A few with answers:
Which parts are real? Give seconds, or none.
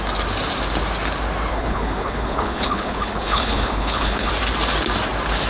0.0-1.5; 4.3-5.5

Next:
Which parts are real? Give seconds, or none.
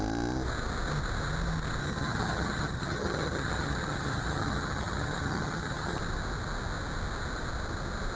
0.0-1.8; 6.0-8.2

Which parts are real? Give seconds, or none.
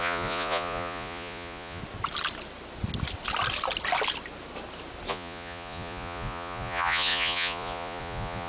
1.8-5.1